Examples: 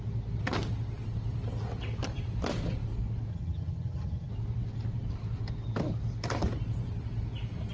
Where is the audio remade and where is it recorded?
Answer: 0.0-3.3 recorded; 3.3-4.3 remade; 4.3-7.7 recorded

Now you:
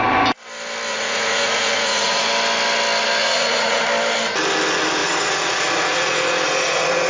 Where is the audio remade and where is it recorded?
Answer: 0.0-0.9 recorded; 0.9-2.2 remade; 2.2-3.2 recorded; 3.2-3.8 remade; 3.8-5.0 recorded; 5.0-7.1 remade

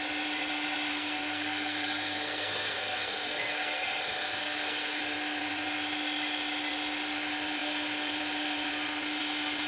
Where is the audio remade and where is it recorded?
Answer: 0.0-0.9 recorded; 0.9-4.0 remade; 4.0-4.4 recorded; 4.4-5.0 remade; 5.0-9.7 recorded